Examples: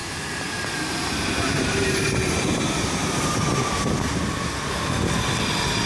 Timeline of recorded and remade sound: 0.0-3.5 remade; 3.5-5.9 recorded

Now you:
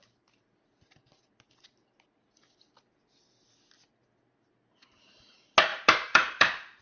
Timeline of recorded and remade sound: 0.0-5.7 recorded; 5.7-6.8 remade

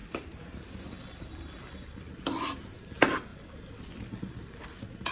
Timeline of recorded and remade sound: 0.0-2.7 remade; 2.7-5.1 recorded

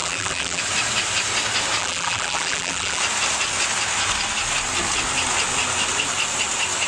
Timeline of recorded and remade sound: 0.0-0.6 remade; 0.6-1.8 recorded; 1.8-3.0 remade; 3.0-6.9 recorded

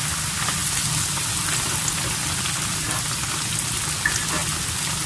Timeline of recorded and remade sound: 0.0-5.1 recorded

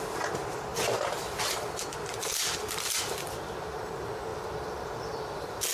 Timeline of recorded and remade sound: 0.0-5.7 recorded